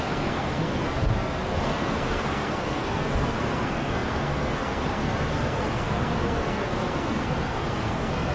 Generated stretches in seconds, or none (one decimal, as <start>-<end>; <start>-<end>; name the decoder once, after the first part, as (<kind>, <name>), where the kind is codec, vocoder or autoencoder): 0.0-8.3 (codec, SNAC)